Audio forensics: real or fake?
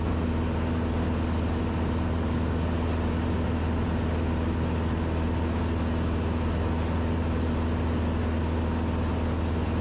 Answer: real